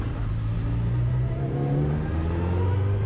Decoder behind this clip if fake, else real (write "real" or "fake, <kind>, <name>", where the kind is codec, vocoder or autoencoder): real